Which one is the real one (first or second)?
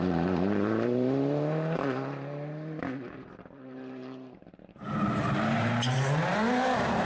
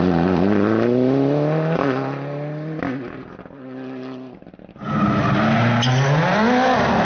second